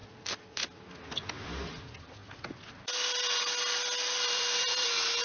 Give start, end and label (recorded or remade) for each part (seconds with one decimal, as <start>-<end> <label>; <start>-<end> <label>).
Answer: 0.0-5.2 recorded